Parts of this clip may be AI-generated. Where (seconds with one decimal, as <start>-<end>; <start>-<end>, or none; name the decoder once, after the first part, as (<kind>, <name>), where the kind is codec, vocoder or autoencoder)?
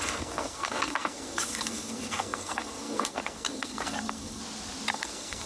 0.0-4.4 (codec, SNAC); 4.9-5.5